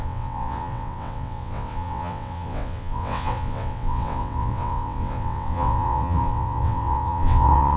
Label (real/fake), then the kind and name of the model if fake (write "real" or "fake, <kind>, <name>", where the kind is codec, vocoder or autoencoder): fake, vocoder, WaveNeXt